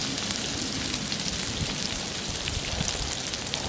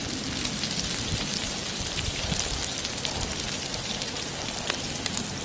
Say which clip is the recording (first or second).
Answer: second